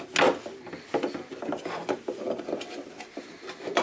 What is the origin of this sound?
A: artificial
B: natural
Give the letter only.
B